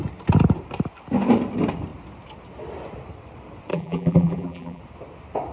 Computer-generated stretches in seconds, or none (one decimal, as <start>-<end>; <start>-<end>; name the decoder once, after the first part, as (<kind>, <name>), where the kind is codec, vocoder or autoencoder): 3.7-4.8 (vocoder, BigVGAN v2)